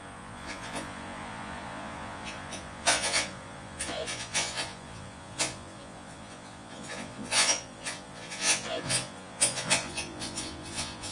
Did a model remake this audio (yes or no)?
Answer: yes